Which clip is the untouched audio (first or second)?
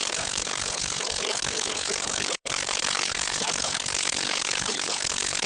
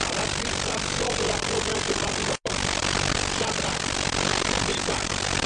second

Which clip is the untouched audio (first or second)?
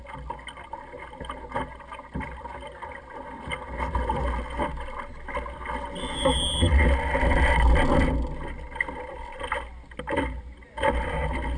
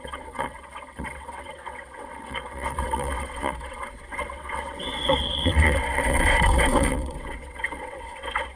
first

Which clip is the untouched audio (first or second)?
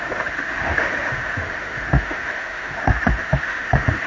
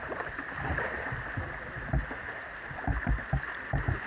second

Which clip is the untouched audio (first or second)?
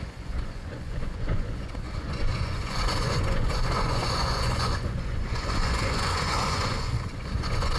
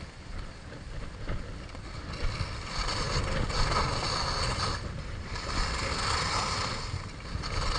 second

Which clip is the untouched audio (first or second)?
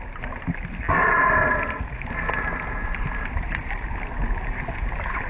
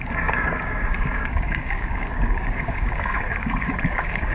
first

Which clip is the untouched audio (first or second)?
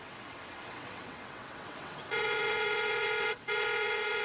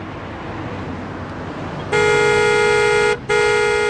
second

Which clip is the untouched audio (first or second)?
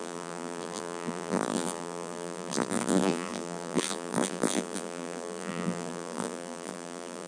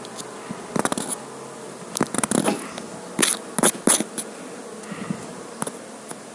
second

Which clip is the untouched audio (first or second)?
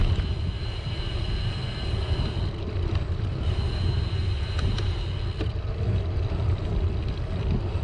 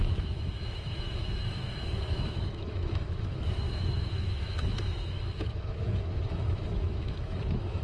first